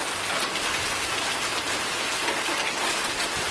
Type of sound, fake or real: real